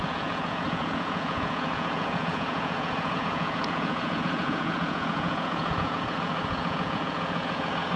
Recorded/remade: remade